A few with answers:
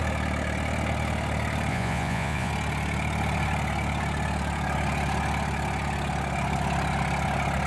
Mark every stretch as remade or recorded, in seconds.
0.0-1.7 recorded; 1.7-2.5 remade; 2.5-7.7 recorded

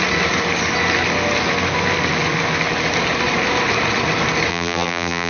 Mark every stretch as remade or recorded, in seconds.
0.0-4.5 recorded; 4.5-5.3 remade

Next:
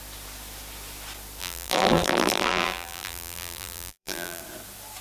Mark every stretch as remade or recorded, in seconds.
0.0-1.4 recorded; 1.4-4.4 remade; 4.4-5.0 recorded

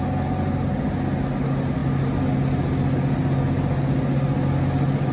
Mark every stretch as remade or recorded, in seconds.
0.0-5.1 recorded

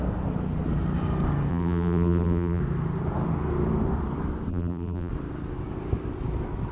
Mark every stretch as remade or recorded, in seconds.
0.0-1.5 recorded; 1.5-2.6 remade; 2.6-4.5 recorded; 4.5-5.1 remade; 5.1-6.7 recorded